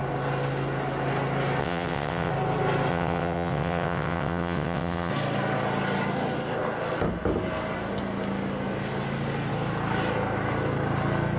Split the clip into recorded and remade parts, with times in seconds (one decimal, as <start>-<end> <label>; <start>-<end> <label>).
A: 0.0-1.6 recorded; 1.6-2.3 remade; 2.3-2.9 recorded; 2.9-5.1 remade; 5.1-11.4 recorded